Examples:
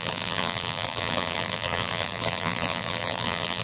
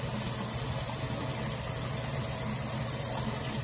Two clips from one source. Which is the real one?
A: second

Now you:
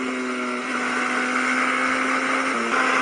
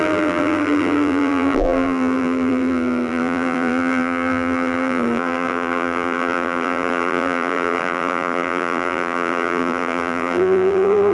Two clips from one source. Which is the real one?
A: first